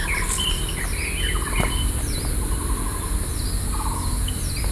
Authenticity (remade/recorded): recorded